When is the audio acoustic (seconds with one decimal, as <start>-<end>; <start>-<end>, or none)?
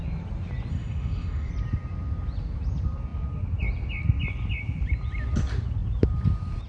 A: 0.0-0.7; 1.5-6.7